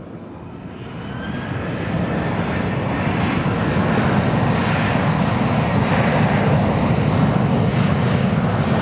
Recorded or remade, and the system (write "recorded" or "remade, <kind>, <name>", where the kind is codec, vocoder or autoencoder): recorded